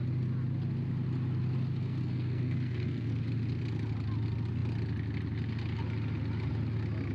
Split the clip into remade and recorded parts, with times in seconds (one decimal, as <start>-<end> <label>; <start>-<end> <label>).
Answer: 0.0-1.8 recorded; 1.8-3.1 remade; 3.1-7.1 recorded